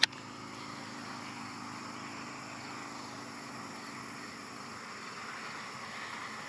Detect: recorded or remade recorded